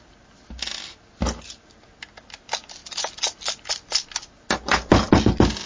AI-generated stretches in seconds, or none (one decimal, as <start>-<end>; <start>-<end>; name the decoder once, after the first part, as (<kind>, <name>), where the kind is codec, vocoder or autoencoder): none